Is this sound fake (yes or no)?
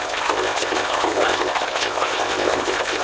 yes